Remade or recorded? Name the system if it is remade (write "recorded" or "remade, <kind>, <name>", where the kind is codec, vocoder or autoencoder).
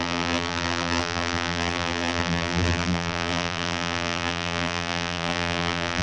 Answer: remade, vocoder, BigVGAN v2